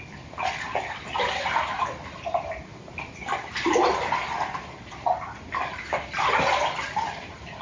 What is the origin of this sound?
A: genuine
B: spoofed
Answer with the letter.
A